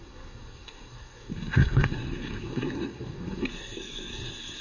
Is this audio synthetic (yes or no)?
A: yes